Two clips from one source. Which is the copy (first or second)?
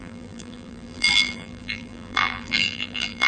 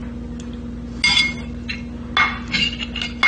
first